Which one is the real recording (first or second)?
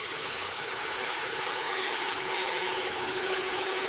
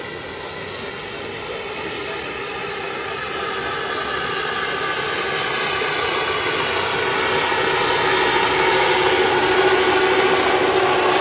second